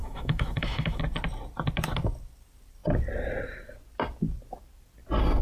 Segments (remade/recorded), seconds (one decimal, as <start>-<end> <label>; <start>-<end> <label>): 0.0-1.0 remade; 1.0-5.4 recorded